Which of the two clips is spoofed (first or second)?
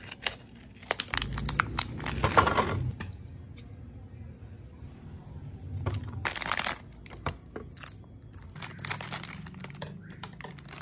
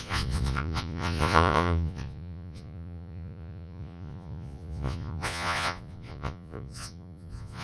second